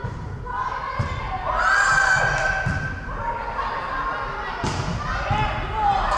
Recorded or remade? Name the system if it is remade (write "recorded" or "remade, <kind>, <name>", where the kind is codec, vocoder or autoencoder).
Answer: recorded